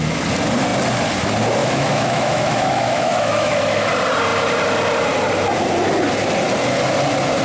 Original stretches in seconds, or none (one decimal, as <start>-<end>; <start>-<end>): 0.0-1.6; 3.9-7.4

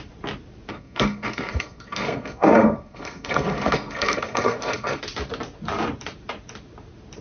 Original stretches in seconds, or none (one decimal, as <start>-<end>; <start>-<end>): 0.0-0.7; 5.0-7.2

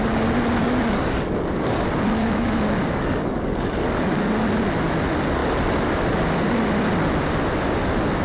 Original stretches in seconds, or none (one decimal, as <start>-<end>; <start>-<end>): 0.0-0.6; 4.3-8.2

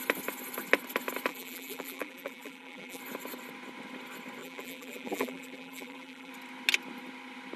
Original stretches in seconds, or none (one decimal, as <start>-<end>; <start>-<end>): 0.0-1.3; 3.0-4.4; 6.3-7.6

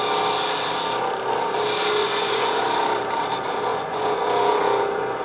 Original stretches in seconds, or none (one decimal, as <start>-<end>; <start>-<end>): 0.0-2.0; 2.6-3.7